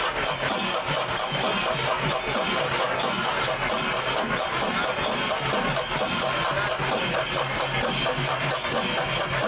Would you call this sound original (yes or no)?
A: yes